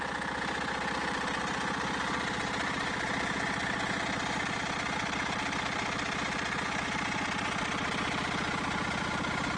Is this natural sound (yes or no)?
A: yes